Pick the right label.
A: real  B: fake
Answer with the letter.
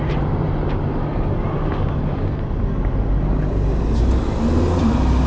A